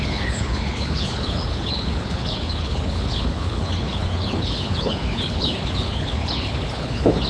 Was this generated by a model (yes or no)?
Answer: yes